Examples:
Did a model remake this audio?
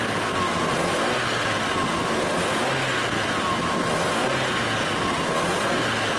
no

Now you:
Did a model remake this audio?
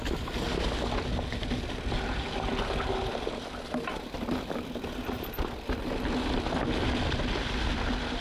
no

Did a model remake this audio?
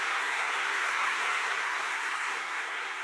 yes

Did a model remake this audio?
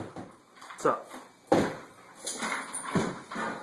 no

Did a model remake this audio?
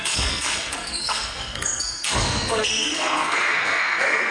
yes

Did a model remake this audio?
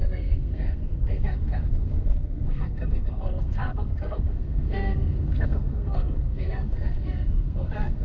yes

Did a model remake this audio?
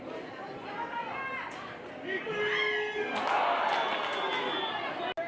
no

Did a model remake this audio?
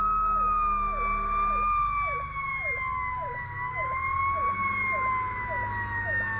no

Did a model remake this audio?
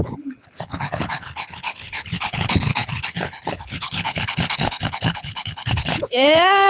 yes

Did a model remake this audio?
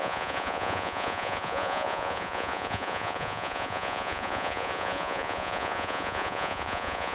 yes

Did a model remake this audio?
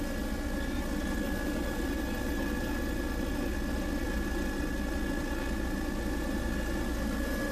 no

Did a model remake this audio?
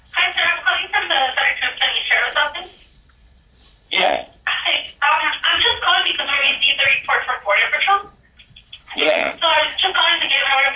yes